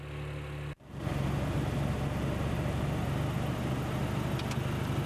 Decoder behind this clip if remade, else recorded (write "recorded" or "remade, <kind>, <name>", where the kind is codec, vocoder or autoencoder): recorded